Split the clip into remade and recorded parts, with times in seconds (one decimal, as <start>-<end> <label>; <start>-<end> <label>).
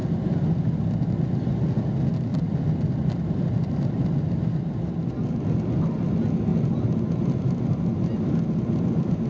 0.0-0.6 remade; 0.6-2.3 recorded; 2.3-4.1 remade; 4.1-6.5 recorded; 6.5-7.8 remade; 7.8-9.3 recorded